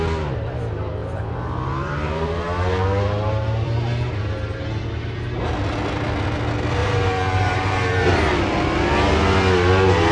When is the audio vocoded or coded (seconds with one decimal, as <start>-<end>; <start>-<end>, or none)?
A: 1.0-4.8; 6.8-8.3